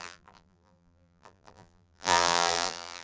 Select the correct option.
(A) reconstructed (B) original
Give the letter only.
A